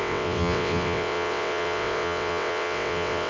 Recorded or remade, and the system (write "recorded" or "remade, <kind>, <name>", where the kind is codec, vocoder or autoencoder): remade, vocoder, WaveNeXt